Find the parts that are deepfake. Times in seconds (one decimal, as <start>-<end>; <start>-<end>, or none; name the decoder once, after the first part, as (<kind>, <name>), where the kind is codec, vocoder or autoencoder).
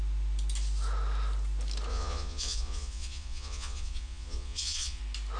1.9-5.0 (vocoder, Vocos)